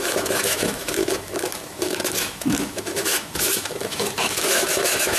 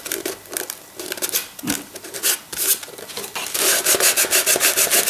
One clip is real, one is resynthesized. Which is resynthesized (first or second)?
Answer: first